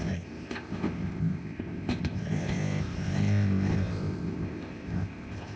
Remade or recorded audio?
remade